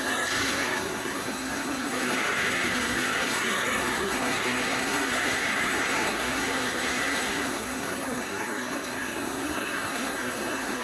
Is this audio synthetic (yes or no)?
yes